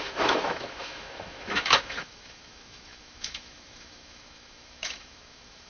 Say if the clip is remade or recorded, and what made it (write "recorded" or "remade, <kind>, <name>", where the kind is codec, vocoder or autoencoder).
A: remade, autoencoder, DAC-VAE